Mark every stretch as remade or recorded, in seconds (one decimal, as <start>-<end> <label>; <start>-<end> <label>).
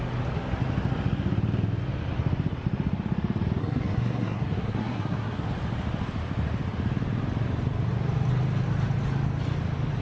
0.0-3.6 recorded; 3.6-5.5 remade; 5.5-10.0 recorded